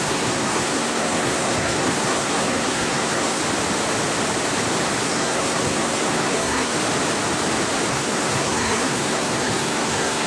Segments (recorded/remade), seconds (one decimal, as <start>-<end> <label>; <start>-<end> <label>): 0.0-3.4 remade; 3.4-5.0 recorded; 5.0-6.7 remade; 6.7-7.9 recorded; 7.9-10.3 remade